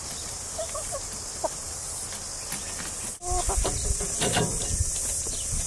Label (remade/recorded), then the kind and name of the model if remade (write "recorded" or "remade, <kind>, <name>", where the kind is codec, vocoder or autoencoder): recorded